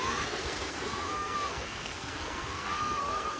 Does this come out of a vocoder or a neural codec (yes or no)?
yes